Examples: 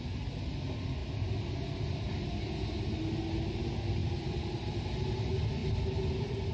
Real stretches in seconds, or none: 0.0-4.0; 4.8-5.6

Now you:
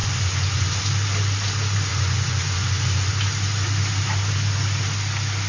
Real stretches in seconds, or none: 0.8-1.9; 3.1-5.5

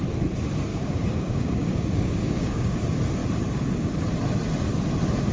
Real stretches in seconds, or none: 0.0-0.7; 2.8-5.3

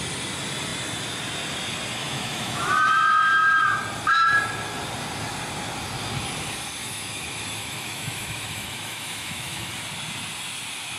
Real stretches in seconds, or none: 0.0-2.0; 2.7-6.8; 9.7-11.0